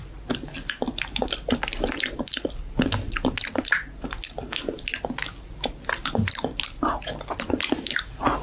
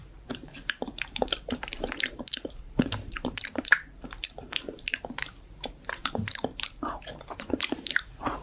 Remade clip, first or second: second